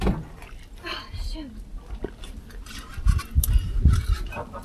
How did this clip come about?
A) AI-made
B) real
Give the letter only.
B